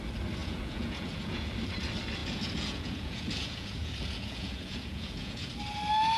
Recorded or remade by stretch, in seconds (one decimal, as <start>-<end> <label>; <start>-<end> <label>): 0.0-0.4 recorded; 0.4-1.5 remade; 1.5-2.2 recorded; 2.2-5.5 remade; 5.5-6.2 recorded